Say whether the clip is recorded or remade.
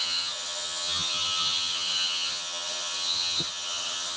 remade